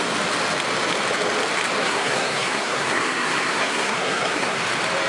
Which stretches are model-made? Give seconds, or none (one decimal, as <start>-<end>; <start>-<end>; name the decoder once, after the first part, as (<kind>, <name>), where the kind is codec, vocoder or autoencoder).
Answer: 1.8-4.6 (codec, SNAC)